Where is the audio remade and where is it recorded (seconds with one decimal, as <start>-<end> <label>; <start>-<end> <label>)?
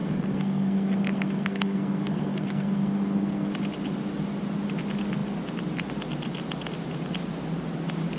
0.0-3.5 remade; 3.5-8.2 recorded